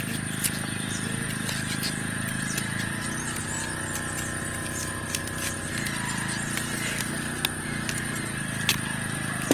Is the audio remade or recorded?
recorded